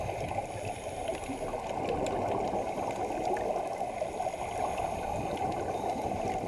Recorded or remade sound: recorded